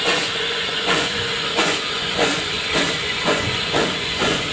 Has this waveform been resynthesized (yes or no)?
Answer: yes